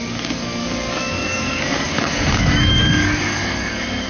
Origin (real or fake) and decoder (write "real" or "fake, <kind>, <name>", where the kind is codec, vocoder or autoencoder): fake, codec, DAC